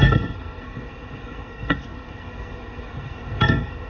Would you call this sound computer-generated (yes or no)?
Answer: yes